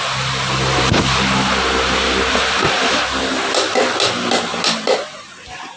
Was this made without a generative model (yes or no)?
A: yes